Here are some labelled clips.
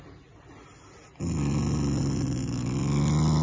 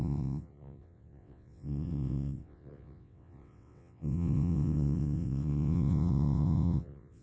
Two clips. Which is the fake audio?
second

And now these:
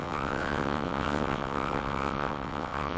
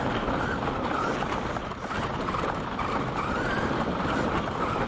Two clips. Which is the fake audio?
first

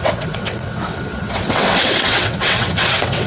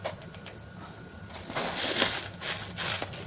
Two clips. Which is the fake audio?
first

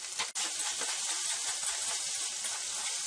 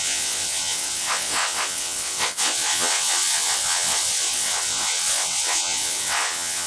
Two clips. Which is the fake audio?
second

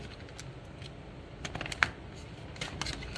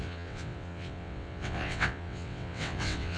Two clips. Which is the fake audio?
second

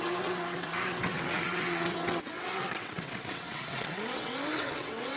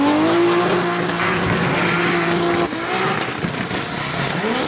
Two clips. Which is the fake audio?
first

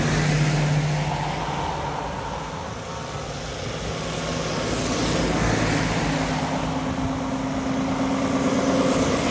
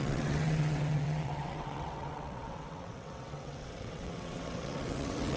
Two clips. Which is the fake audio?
second